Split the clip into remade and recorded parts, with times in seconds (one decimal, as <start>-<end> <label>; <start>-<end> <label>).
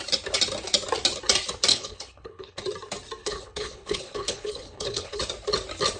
0.0-1.7 recorded; 1.7-2.6 remade; 2.6-3.2 recorded; 3.2-5.2 remade; 5.2-6.0 recorded